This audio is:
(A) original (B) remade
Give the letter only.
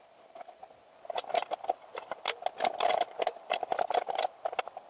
A